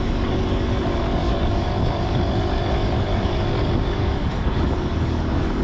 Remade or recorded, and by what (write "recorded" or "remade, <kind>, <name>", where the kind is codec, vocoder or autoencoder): remade, codec, DAC